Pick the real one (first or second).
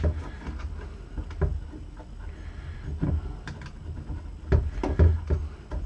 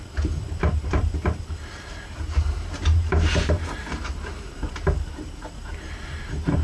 first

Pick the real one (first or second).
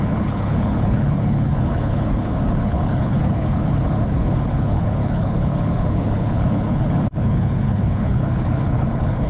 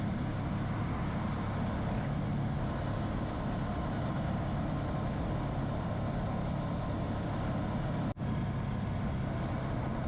second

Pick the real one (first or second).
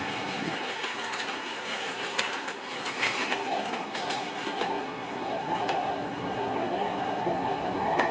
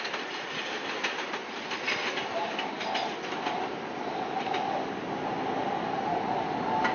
second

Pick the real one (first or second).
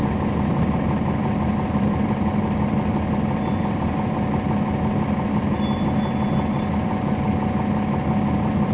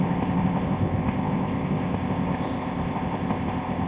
first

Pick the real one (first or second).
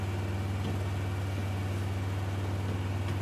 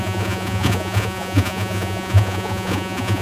first